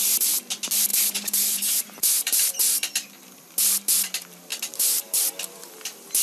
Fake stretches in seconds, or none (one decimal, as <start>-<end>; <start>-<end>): 0.9-2.6; 4.5-5.3